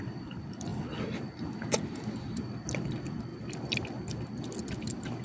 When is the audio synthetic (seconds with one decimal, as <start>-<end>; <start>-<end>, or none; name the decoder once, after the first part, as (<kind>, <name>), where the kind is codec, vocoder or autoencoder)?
none